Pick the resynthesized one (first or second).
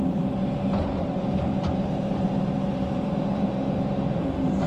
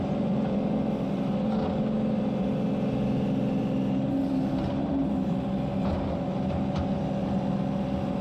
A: first